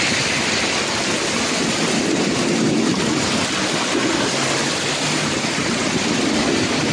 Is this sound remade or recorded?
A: recorded